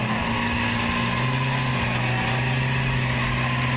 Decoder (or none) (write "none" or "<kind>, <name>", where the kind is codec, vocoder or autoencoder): none